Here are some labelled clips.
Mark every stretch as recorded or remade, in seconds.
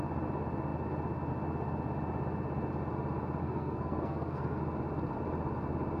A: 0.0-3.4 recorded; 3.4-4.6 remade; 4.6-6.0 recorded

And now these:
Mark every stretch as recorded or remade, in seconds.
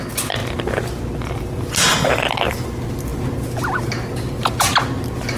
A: 0.0-5.4 recorded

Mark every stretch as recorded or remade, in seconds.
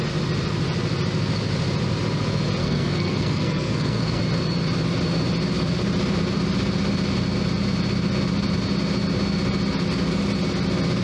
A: 0.0-2.6 recorded; 2.6-4.2 remade; 4.2-11.0 recorded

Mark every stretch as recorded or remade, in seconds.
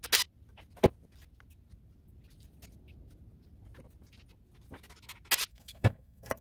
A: 0.0-5.5 recorded; 5.5-6.4 remade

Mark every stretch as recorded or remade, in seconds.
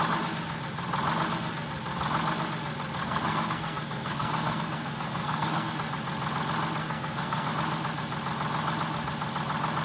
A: 0.0-3.0 recorded; 3.0-5.7 remade; 5.7-6.8 recorded; 6.8-7.5 remade; 7.5-9.8 recorded